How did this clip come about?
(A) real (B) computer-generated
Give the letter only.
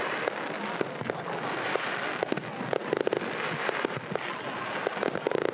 A